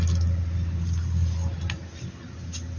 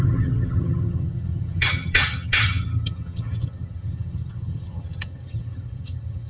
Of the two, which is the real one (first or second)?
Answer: first